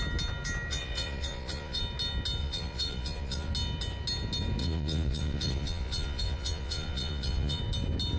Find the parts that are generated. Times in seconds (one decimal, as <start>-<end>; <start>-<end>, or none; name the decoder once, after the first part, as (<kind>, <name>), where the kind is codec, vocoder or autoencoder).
0.7-1.8 (vocoder, Vocos); 2.4-3.5; 4.6-7.6